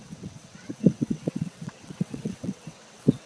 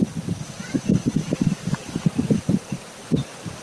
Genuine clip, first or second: second